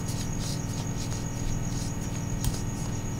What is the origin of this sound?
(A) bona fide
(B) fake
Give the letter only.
A